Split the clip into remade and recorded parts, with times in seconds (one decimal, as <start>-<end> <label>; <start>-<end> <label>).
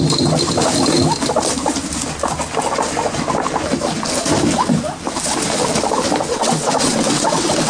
0.0-6.3 recorded; 6.3-7.7 remade